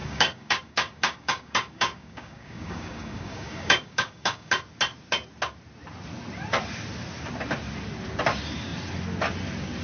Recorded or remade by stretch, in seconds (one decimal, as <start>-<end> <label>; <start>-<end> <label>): 0.0-4.5 remade; 4.5-9.8 recorded